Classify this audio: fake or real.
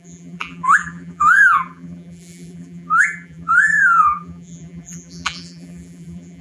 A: fake